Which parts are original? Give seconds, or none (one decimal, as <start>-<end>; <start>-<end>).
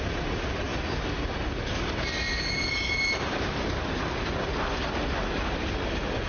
0.0-6.3